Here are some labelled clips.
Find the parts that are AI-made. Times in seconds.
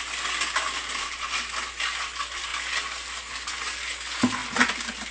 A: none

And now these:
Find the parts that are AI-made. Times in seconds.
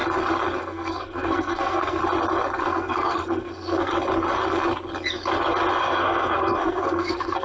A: 0.6-2.0 (codec, SNAC); 2.6-3.9; 5.8-7.4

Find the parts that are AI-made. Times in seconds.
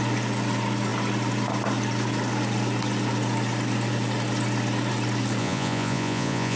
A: 5.4-6.6 (vocoder, Vocos)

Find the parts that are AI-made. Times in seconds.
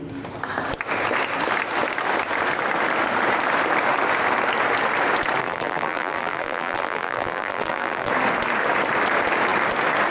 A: 5.4-8.1 (vocoder, BigVGAN v2)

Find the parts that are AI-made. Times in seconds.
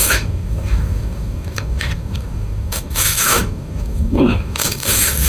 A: 0.0-5.3 (codec, DAC)